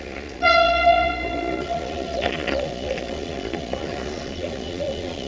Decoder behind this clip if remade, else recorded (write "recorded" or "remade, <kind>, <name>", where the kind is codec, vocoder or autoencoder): remade, vocoder, Vocos